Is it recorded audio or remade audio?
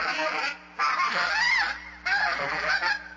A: remade